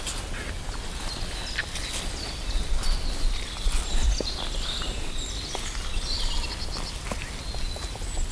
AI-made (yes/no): no